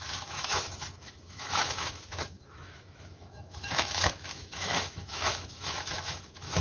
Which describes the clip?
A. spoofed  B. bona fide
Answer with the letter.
A